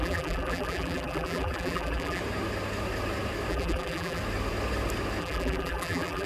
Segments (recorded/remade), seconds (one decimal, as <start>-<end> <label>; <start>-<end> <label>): 0.0-2.2 remade; 2.2-3.5 recorded; 3.5-4.2 remade; 4.2-5.2 recorded; 5.2-6.3 remade